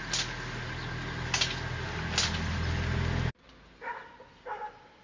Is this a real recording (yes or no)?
yes